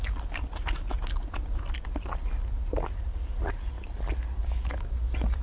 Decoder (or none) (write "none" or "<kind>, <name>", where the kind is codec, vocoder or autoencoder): none